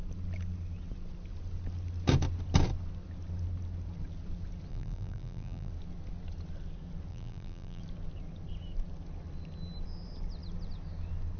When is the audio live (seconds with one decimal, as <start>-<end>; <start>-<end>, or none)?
0.0-4.7; 5.7-7.1; 7.8-11.4